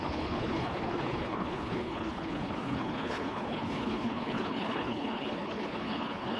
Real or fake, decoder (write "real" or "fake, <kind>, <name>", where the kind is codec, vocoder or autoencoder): fake, codec, HILCodec